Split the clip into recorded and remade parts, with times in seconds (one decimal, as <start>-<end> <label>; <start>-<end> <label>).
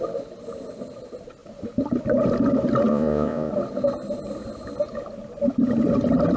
0.0-2.9 recorded; 2.9-3.5 remade; 3.5-6.4 recorded